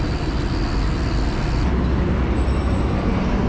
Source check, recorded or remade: recorded